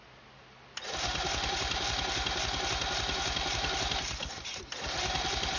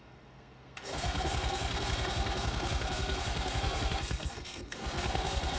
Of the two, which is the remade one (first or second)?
second